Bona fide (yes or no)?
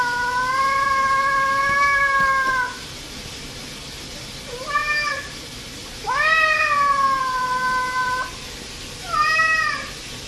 yes